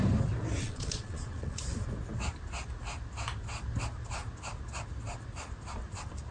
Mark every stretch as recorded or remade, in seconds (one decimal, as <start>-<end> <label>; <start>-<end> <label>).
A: 0.0-0.6 recorded; 0.6-1.6 remade; 1.6-6.3 recorded